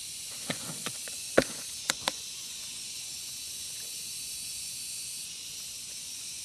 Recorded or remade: remade